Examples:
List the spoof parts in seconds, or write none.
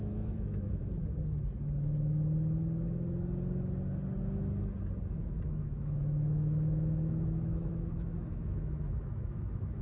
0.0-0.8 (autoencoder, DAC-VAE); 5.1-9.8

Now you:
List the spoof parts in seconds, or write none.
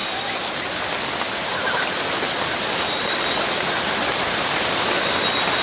none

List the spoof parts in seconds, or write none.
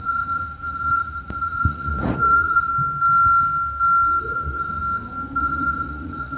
0.0-2.7 (vocoder, Vocos); 4.2-4.8; 5.4-6.4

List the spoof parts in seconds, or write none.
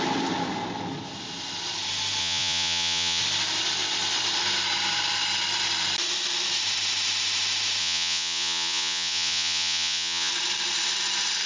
2.2-3.2 (vocoder, Vocos); 7.8-10.3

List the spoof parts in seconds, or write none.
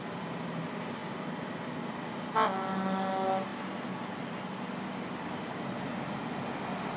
none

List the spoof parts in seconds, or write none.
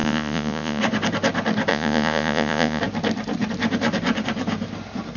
0.0-0.8 (vocoder, Vocos); 1.7-2.8